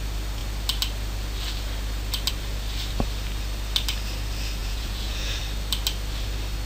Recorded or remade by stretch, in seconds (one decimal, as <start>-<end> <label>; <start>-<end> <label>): 0.0-4.6 recorded; 4.6-5.4 remade; 5.4-6.7 recorded